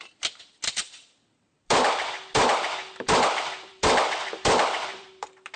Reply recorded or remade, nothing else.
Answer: remade